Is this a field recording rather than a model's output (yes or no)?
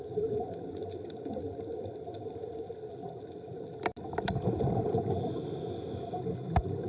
yes